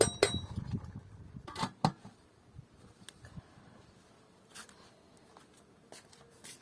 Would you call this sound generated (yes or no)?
no